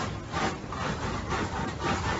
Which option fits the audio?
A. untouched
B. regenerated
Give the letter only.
A